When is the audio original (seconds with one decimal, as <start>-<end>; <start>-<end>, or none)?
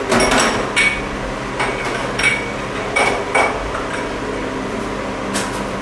0.0-2.3; 3.9-5.8